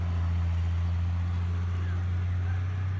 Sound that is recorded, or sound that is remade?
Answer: recorded